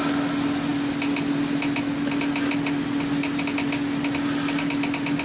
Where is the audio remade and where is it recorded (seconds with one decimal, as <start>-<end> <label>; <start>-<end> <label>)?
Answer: 0.0-5.2 recorded